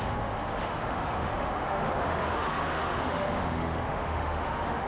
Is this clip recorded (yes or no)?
no